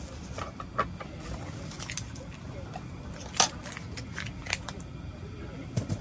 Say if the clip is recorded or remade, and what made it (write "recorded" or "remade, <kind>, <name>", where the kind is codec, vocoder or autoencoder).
recorded